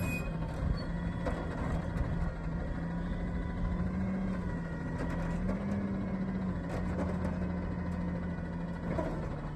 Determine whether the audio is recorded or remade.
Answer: recorded